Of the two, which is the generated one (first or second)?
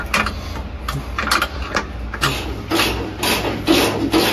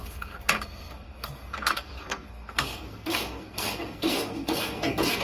second